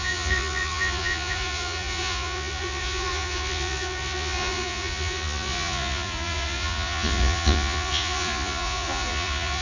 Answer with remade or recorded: remade